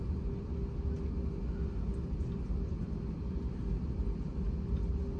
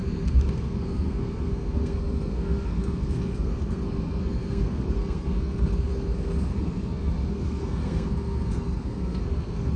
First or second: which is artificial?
second